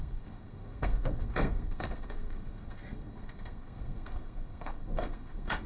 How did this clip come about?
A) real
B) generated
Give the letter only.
B